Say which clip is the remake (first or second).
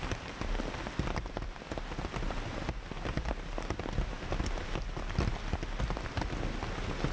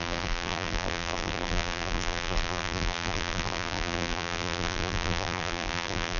second